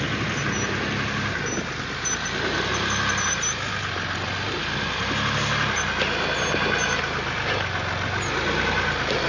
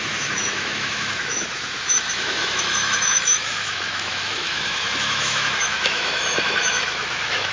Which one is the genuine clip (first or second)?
first